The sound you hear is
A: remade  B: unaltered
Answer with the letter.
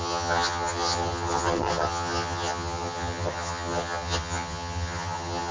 A